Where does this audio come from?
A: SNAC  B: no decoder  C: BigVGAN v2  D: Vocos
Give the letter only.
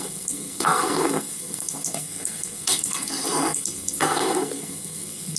A